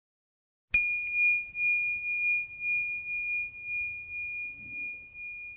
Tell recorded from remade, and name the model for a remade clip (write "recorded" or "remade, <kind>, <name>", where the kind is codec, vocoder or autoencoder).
recorded